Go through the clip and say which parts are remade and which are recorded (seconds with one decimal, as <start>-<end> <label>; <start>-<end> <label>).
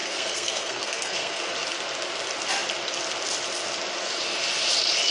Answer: 0.0-1.5 remade; 1.5-5.1 recorded